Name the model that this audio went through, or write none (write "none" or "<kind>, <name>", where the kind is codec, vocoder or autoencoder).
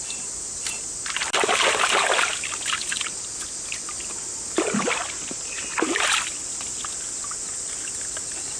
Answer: none